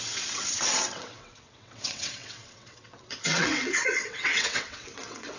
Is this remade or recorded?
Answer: remade